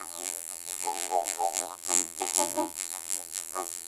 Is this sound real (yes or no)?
no